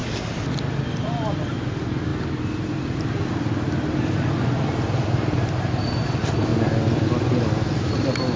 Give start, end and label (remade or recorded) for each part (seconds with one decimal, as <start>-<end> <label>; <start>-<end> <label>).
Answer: 0.0-8.4 recorded